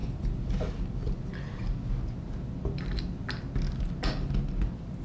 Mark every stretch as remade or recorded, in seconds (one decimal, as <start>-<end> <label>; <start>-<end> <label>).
0.0-0.7 remade; 0.7-5.0 recorded